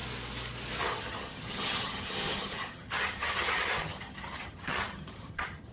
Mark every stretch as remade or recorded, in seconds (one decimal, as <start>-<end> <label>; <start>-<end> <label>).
0.0-0.8 recorded; 0.8-5.7 remade